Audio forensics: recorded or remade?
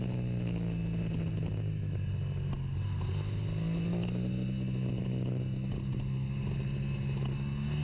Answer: recorded